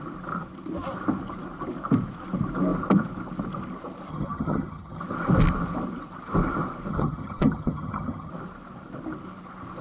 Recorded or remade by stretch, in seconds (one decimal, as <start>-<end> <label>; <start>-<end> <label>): 0.0-4.1 recorded; 4.1-5.0 remade; 5.0-6.9 recorded; 6.9-8.3 remade; 8.3-9.8 recorded